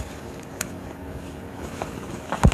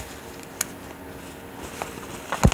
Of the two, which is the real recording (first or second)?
second